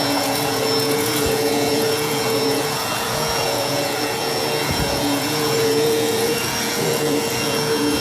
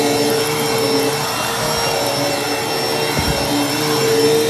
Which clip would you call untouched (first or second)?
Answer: second